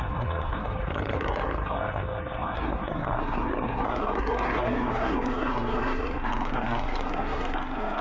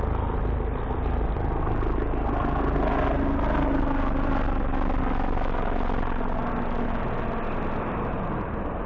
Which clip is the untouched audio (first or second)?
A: second